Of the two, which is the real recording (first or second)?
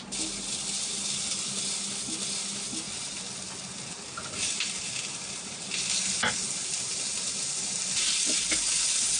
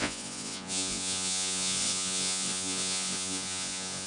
first